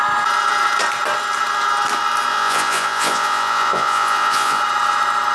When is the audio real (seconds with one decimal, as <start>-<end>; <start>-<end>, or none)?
0.0-2.3; 4.6-5.3